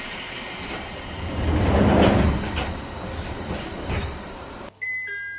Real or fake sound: real